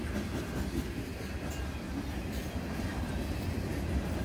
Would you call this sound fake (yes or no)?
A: no